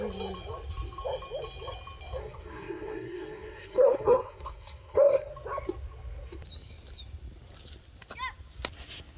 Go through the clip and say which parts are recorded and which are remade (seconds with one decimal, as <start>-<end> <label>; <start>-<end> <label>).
0.0-2.2 recorded; 2.2-5.3 remade; 5.3-9.2 recorded